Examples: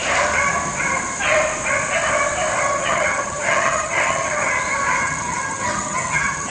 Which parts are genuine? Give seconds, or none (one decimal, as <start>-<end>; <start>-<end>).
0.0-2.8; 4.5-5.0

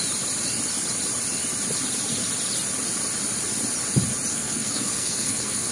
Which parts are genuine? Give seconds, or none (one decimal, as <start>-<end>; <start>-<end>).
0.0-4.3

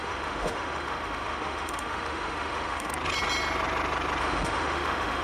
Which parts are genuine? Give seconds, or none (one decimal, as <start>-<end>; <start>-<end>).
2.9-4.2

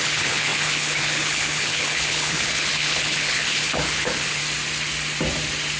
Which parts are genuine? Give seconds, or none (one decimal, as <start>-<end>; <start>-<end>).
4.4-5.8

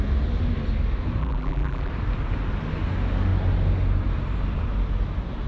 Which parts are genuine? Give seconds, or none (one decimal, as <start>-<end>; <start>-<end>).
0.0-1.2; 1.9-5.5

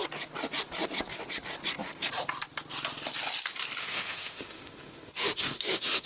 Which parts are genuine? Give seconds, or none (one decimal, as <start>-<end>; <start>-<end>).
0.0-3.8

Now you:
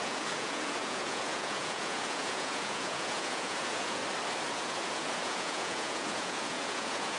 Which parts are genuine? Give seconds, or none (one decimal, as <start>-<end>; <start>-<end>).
4.0-4.5